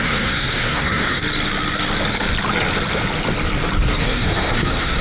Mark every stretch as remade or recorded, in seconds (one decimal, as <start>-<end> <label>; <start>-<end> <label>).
0.0-1.2 remade; 1.2-4.0 recorded; 4.0-5.0 remade